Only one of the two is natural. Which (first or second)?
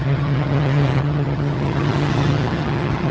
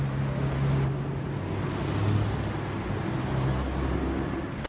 second